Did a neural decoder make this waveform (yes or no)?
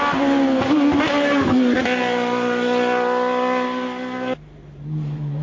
no